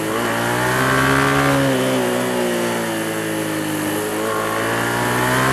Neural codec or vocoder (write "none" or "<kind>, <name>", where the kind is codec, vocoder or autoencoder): none